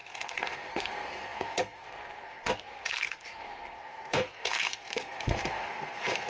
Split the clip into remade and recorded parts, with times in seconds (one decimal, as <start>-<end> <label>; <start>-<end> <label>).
0.0-6.3 remade